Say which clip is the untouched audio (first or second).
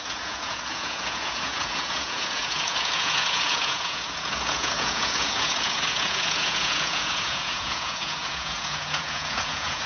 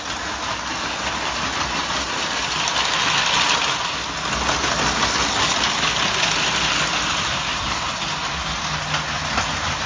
second